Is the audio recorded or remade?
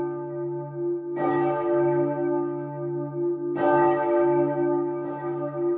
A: remade